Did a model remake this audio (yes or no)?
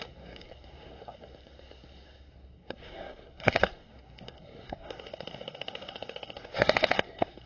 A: yes